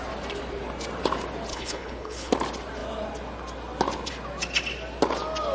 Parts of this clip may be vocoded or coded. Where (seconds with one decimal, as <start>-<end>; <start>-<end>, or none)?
1.5-2.3